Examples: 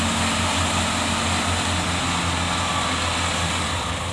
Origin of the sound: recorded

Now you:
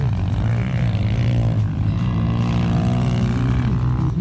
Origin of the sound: recorded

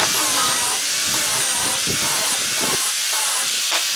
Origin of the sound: recorded